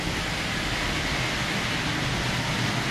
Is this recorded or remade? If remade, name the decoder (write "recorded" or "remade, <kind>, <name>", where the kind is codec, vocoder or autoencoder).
recorded